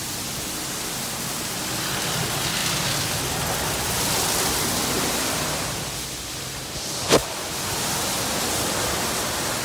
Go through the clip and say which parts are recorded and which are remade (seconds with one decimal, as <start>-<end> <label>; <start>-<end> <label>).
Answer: 0.0-9.6 recorded